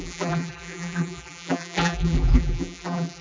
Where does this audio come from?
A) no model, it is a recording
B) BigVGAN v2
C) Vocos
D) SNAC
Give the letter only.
B